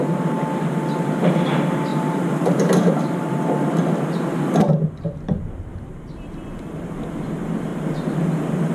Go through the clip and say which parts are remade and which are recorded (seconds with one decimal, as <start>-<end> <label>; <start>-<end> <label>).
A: 0.0-1.9 recorded; 1.9-3.3 remade; 3.3-5.7 recorded; 5.7-6.3 remade; 6.3-7.7 recorded; 7.7-8.2 remade; 8.2-8.7 recorded